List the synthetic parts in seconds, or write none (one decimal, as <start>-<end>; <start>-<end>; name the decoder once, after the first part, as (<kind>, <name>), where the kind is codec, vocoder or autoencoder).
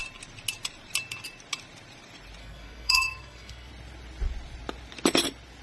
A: 2.4-3.7 (codec, SNAC)